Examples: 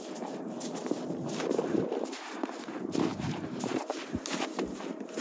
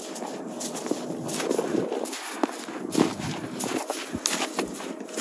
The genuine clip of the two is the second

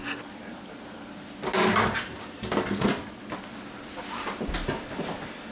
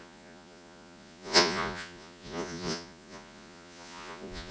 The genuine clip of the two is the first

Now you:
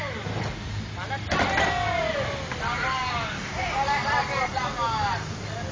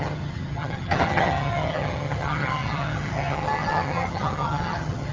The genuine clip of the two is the first